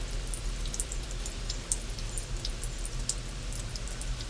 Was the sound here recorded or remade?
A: recorded